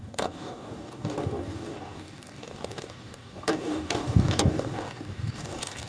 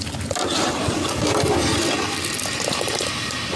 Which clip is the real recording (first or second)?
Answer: second